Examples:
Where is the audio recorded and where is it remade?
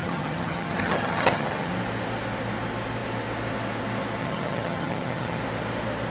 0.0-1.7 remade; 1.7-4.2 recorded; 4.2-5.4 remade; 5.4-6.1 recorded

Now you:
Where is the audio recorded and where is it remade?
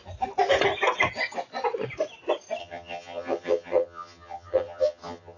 0.0-2.6 recorded; 2.6-5.4 remade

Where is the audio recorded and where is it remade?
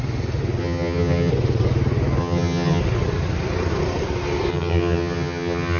0.0-0.6 recorded; 0.6-1.3 remade; 1.3-2.2 recorded; 2.2-2.8 remade; 2.8-4.5 recorded; 4.5-5.8 remade